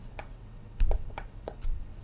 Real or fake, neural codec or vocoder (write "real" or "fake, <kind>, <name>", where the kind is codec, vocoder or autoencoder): fake, vocoder, WaveNeXt